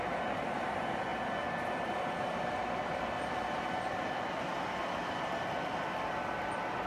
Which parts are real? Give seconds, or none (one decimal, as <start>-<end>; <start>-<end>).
0.0-6.9